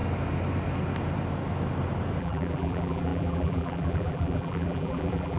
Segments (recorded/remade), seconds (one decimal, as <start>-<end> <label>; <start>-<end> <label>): 0.0-2.2 recorded; 2.2-5.4 remade